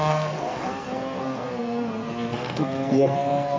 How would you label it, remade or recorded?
remade